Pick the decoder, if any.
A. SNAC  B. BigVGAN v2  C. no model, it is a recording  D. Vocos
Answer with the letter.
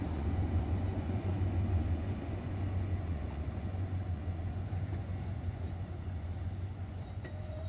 D